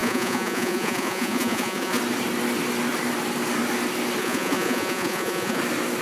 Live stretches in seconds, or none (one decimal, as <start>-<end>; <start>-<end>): 2.0-4.2; 5.6-6.0